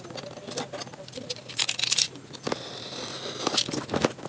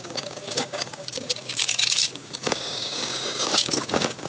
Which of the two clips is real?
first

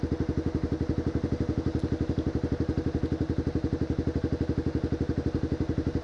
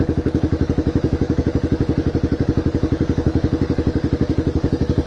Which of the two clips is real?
first